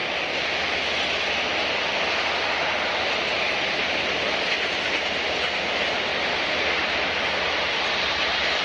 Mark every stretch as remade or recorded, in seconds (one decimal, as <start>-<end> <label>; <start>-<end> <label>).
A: 0.0-4.5 recorded; 4.5-6.1 remade; 6.1-8.6 recorded